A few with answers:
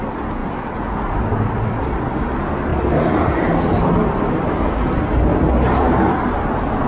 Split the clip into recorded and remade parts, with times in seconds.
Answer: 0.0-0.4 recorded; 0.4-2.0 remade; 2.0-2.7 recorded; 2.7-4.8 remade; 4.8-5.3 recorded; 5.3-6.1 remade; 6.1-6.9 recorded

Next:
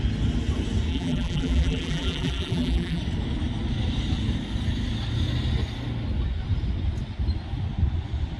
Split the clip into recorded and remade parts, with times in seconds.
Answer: 0.0-0.9 recorded; 0.9-3.0 remade; 3.0-8.4 recorded

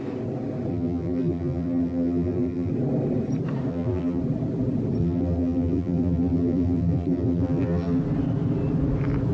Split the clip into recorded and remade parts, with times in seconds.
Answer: 0.0-0.7 recorded; 0.7-2.7 remade; 2.7-3.7 recorded; 3.7-4.2 remade; 4.2-5.0 recorded; 5.0-8.0 remade; 8.0-9.3 recorded

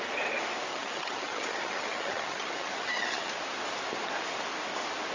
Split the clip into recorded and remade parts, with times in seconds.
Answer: 0.0-0.7 recorded; 0.7-3.3 remade; 3.3-5.1 recorded

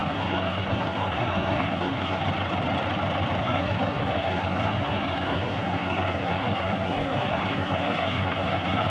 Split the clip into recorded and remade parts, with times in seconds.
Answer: 0.0-2.2 remade; 2.2-3.4 recorded; 3.4-8.9 remade

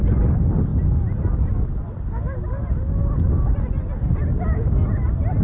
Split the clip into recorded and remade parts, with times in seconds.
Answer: 0.0-5.4 recorded

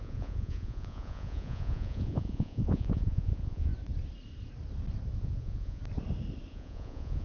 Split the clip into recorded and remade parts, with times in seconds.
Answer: 0.0-3.7 remade; 3.7-5.2 recorded; 5.2-5.8 remade; 5.8-6.5 recorded; 6.5-7.2 remade

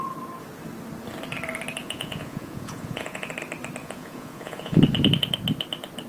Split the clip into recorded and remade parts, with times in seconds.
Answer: 0.0-1.8 recorded; 1.8-3.3 remade; 3.3-3.8 recorded; 3.8-4.8 remade; 4.8-6.1 recorded